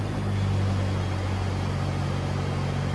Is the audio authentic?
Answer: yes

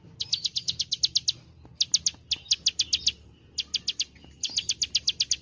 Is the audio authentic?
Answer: yes